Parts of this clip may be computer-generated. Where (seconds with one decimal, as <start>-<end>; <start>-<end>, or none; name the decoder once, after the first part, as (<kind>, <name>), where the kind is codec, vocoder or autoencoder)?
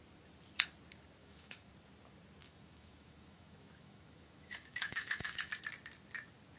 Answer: 1.2-1.7 (autoencoder, DAC-VAE); 2.4-5.5